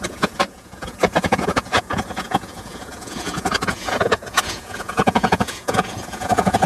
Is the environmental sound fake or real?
fake